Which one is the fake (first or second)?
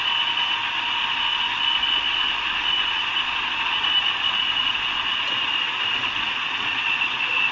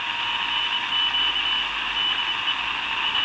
first